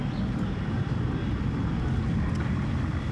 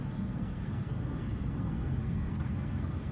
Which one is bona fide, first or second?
first